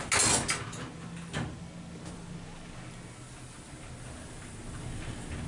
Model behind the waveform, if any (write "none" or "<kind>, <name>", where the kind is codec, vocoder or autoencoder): none